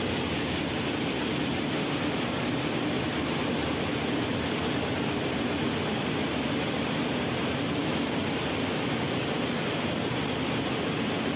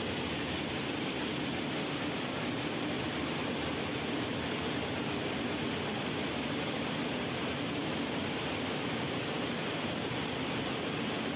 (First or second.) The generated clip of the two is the second